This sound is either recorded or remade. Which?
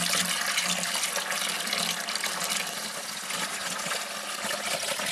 recorded